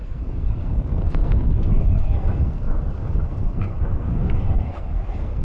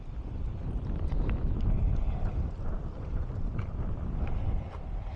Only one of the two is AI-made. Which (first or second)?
first